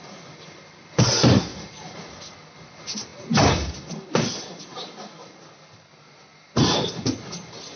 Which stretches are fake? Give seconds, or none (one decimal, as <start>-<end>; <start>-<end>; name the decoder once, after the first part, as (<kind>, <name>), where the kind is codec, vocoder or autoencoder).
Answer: none